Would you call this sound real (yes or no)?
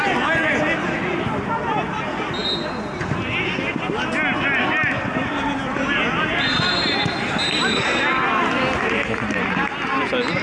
yes